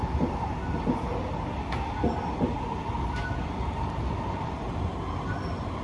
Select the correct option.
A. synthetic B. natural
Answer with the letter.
B